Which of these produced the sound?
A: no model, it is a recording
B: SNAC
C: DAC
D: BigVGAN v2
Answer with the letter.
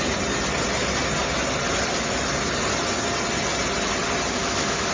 A